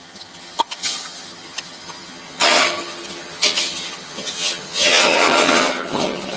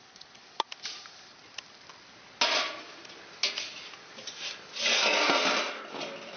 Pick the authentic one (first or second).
second